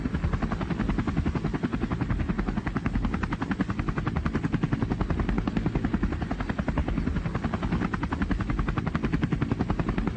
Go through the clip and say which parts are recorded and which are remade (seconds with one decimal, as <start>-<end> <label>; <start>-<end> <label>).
0.0-10.2 recorded